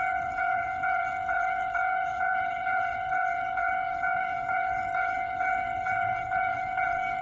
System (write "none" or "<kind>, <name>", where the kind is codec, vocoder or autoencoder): codec, HILCodec